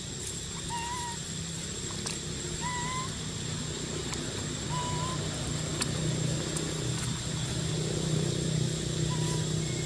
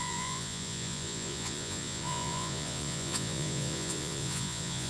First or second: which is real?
first